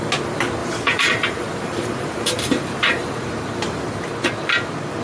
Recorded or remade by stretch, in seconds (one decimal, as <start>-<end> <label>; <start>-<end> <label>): 0.0-0.6 recorded; 0.6-3.3 remade; 3.3-5.0 recorded